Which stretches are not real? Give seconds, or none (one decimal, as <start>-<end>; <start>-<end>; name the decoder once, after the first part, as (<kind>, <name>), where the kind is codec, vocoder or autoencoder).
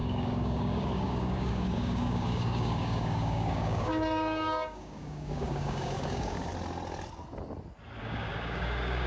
0.0-6.5 (codec, DAC); 8.0-9.1